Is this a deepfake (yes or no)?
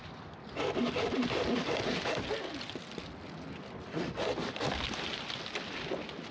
no